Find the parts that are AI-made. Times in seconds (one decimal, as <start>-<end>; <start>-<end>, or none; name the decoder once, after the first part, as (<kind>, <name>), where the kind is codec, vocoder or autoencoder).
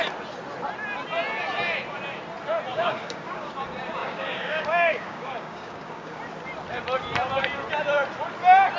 2.7-3.5 (codec, DAC); 4.0-6.2